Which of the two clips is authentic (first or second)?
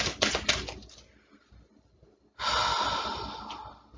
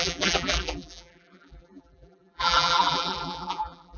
first